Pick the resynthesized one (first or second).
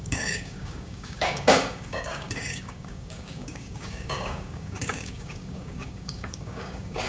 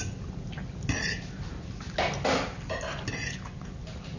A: first